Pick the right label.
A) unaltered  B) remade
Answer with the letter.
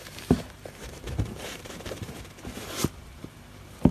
B